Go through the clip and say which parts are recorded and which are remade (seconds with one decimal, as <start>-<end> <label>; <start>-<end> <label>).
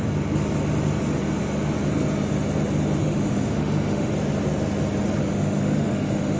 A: 0.0-3.0 recorded; 3.0-4.1 remade; 4.1-5.2 recorded; 5.2-6.4 remade